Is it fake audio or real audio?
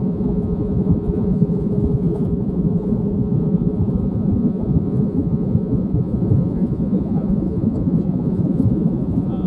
fake